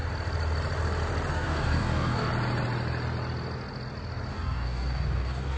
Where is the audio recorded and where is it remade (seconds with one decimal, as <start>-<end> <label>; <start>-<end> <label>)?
0.0-1.3 recorded; 1.3-2.3 remade; 2.3-4.3 recorded; 4.3-5.6 remade